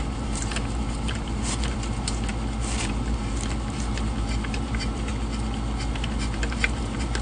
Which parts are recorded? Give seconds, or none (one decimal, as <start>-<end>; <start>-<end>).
2.3-2.8; 5.1-5.9